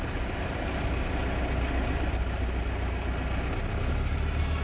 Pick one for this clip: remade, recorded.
recorded